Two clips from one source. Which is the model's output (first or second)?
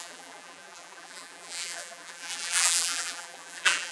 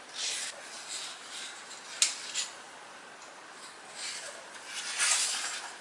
first